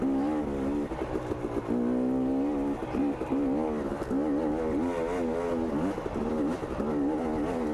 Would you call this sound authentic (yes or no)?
yes